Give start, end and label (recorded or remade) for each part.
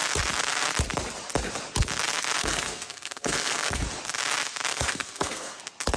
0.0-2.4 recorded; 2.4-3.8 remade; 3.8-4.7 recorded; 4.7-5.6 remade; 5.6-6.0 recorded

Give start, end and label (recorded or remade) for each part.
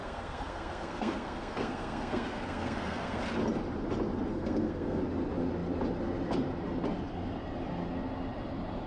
0.0-3.2 remade; 3.2-4.3 recorded; 4.3-5.0 remade; 5.0-8.9 recorded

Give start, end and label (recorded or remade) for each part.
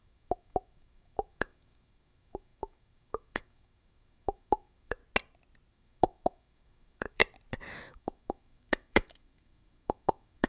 0.0-5.0 remade; 5.0-5.7 recorded; 5.7-7.2 remade; 7.2-7.9 recorded; 7.9-10.5 remade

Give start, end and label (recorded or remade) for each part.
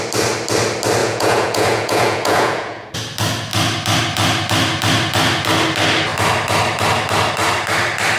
0.0-1.0 recorded; 1.0-2.9 remade; 2.9-8.2 recorded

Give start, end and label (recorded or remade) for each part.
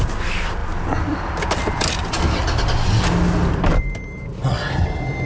0.0-5.3 recorded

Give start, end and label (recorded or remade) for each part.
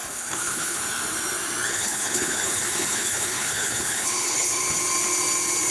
0.0-0.8 remade; 0.8-1.7 recorded; 1.7-4.6 remade; 4.6-5.7 recorded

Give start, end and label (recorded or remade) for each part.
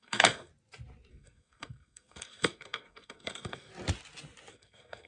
0.0-0.5 remade; 0.5-1.1 recorded; 1.1-3.7 remade; 3.7-4.5 recorded; 4.5-5.1 remade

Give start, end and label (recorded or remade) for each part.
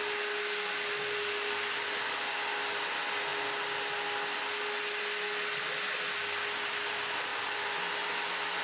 0.0-8.6 recorded